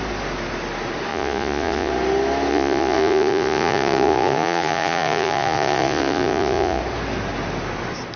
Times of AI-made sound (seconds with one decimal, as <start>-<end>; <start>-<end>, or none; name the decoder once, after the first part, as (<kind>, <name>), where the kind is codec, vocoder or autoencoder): 1.1-1.9 (vocoder, Vocos); 2.5-6.8